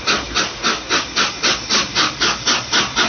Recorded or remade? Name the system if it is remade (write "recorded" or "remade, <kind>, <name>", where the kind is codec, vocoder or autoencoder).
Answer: recorded